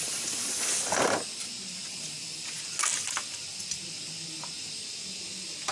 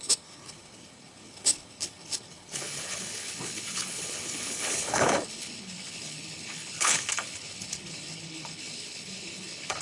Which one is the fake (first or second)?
second